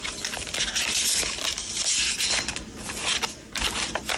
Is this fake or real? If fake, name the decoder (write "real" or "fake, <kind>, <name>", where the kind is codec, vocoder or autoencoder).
real